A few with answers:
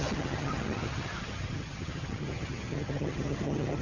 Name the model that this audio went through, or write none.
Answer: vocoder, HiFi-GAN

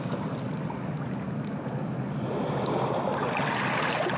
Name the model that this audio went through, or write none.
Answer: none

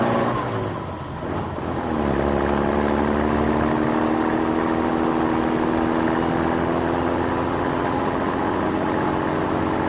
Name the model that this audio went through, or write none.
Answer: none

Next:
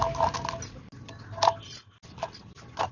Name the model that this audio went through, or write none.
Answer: none